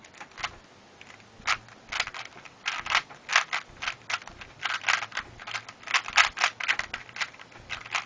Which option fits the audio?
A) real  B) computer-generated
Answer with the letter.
A